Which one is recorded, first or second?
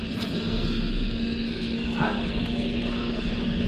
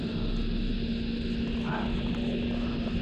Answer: second